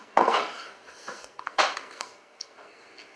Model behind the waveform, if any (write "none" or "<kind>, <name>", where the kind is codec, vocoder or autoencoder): codec, SNAC